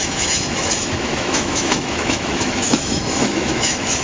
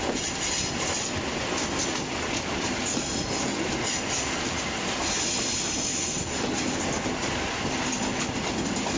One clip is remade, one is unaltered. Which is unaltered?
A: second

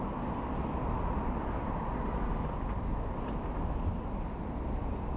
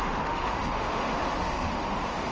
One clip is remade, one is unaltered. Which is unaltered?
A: first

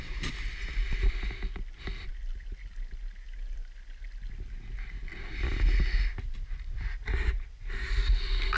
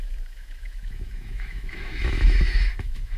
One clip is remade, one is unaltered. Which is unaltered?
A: first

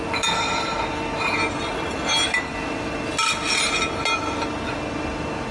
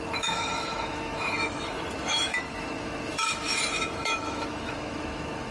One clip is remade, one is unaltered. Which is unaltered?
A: first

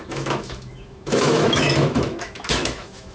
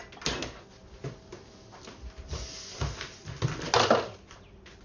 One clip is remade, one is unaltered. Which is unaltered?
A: second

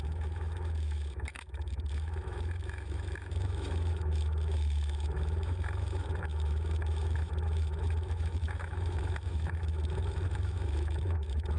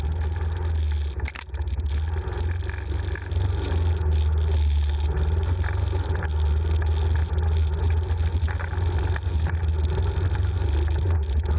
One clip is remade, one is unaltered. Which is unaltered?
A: second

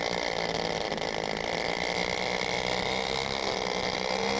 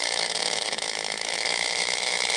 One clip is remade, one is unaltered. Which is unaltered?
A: first